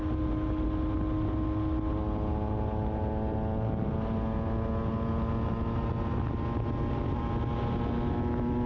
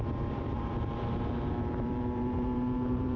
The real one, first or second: first